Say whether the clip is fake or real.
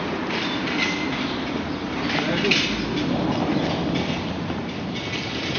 real